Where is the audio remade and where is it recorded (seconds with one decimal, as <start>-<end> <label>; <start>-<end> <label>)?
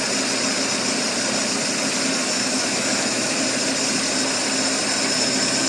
0.0-2.2 recorded; 2.2-3.4 remade; 3.4-5.7 recorded